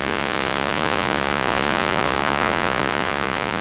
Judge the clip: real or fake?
fake